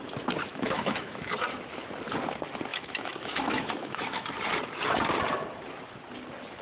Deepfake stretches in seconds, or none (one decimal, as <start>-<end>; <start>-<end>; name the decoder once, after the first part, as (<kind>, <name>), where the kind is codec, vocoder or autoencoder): 0.5-1.3 (autoencoder, DAC-VAE); 2.7-4.3